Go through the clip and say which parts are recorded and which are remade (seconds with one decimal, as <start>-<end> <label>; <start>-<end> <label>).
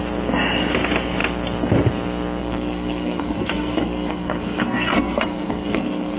0.0-2.4 recorded; 2.4-6.2 remade